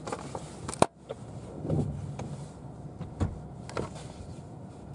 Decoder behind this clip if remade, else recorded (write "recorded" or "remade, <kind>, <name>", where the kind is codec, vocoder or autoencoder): recorded